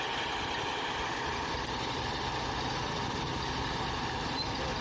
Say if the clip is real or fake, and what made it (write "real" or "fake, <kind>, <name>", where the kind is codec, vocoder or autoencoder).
real